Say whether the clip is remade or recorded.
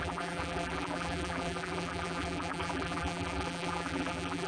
remade